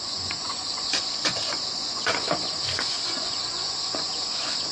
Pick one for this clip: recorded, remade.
remade